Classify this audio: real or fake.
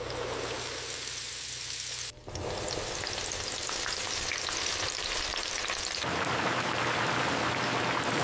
fake